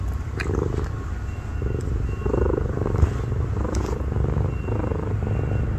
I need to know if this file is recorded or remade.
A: recorded